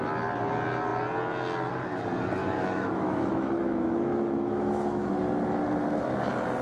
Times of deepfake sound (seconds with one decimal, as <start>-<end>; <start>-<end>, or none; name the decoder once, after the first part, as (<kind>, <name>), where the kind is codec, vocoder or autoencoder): 2.4-5.1 (autoencoder, DAC-VAE)